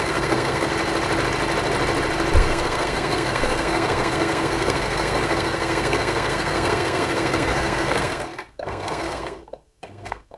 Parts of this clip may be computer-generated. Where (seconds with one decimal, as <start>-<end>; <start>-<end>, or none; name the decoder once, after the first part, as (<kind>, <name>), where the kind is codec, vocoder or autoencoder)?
0.0-0.7 (codec, SNAC); 2.4-10.4